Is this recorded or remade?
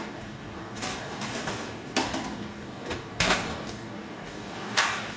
remade